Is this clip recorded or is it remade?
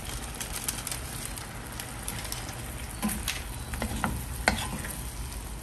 recorded